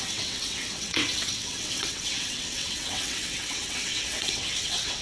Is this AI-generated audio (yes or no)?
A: yes